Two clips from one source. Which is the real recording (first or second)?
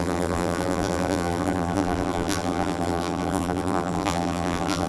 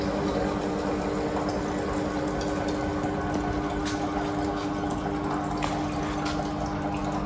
second